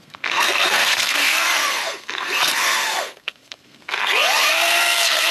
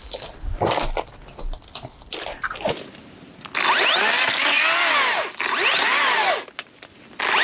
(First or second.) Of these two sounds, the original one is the second